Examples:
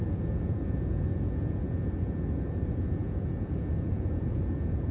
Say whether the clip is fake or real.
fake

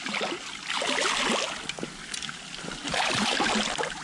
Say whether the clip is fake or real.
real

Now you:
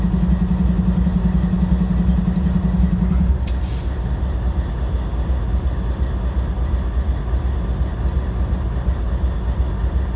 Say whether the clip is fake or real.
real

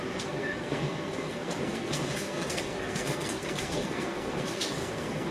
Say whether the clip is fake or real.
fake